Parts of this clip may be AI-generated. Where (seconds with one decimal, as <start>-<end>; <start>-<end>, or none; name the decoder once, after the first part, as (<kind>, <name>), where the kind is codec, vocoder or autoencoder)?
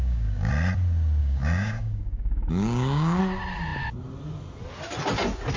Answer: 0.0-0.5 (codec, DAC); 1.2-3.2